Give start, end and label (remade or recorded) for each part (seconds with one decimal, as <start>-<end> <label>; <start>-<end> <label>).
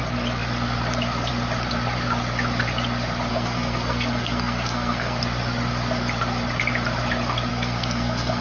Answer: 0.0-3.3 recorded; 3.3-5.2 remade; 5.2-7.5 recorded; 7.5-8.4 remade